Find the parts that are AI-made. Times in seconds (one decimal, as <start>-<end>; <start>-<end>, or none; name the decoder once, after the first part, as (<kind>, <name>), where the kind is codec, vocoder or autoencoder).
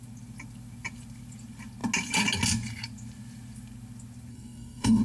4.3-5.0 (codec, SNAC)